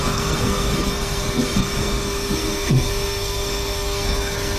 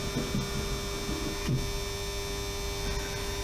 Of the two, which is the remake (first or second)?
first